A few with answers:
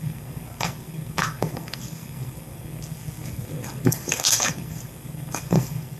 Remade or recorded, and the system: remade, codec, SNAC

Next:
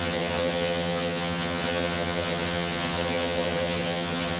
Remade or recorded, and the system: remade, vocoder, HiFi-GAN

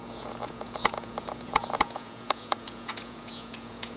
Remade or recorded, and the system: remade, vocoder, Vocos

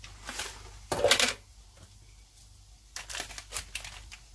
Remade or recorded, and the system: recorded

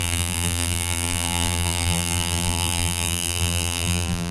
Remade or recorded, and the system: remade, vocoder, BigVGAN v2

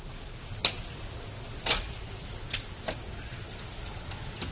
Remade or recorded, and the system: recorded